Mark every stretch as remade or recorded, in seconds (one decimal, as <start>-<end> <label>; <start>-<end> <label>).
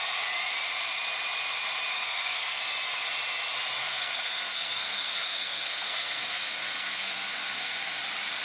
0.0-1.9 recorded; 1.9-2.6 remade; 2.6-3.8 recorded; 3.8-8.0 remade; 8.0-8.4 recorded